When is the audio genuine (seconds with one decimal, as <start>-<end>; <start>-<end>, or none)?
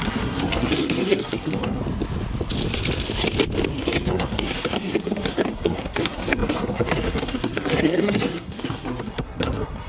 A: 1.8-3.7